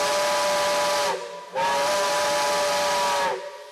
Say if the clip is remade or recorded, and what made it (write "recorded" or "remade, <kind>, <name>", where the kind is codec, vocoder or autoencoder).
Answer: recorded